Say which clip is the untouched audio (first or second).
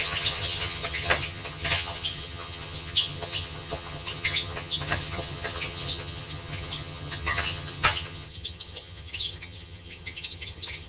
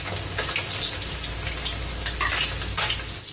second